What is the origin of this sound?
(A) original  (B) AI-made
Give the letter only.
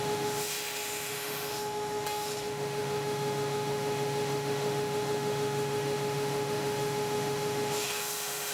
B